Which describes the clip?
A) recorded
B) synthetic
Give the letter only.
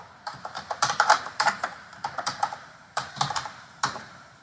B